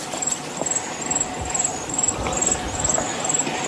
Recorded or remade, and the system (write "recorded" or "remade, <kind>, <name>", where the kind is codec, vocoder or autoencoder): recorded